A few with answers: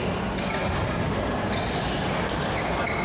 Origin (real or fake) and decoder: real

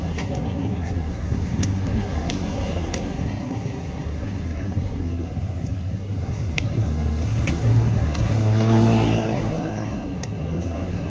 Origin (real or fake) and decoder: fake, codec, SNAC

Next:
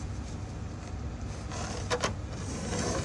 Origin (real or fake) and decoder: fake, vocoder, BigVGAN v2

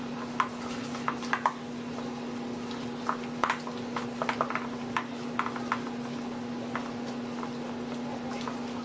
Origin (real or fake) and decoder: real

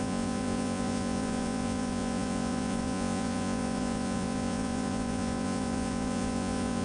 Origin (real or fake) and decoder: fake, vocoder, Vocos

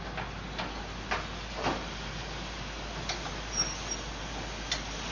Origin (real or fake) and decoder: real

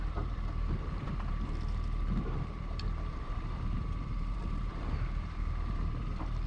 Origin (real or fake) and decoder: fake, vocoder, BigVGAN v2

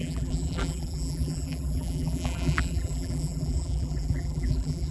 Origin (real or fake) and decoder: fake, vocoder, BigVGAN v2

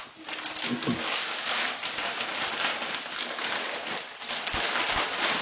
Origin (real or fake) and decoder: real